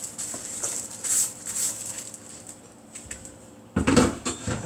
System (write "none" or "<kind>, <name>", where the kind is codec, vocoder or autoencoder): vocoder, BigVGAN v2